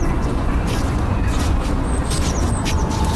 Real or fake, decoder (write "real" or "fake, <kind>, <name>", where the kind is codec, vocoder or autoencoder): fake, vocoder, Vocos